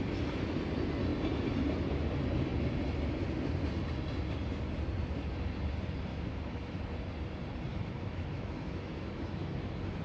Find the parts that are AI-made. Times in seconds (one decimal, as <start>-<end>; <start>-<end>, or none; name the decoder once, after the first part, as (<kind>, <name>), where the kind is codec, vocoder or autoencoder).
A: 6.1-6.8 (autoencoder, DAC-VAE); 7.7-10.0